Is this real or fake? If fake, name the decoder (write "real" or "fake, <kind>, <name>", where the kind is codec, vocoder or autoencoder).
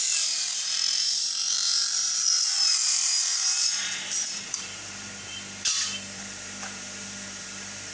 fake, vocoder, BigVGAN v2